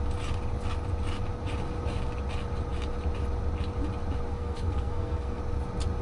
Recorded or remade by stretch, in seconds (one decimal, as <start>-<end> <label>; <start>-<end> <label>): 0.0-4.3 recorded; 4.3-5.4 remade; 5.4-6.0 recorded